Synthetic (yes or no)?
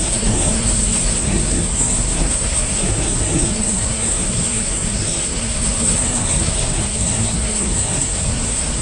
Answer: yes